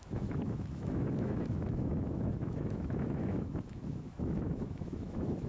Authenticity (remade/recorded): remade